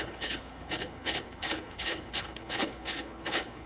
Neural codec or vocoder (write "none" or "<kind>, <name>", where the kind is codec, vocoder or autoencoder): codec, HILCodec